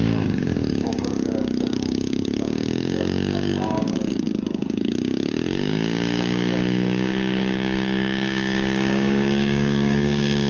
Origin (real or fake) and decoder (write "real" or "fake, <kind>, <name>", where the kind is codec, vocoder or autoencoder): fake, codec, DAC